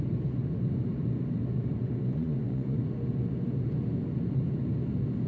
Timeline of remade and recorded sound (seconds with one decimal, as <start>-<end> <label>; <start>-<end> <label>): 0.0-1.8 recorded; 1.8-2.8 remade; 2.8-5.3 recorded